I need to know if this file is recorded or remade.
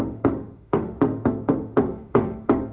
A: remade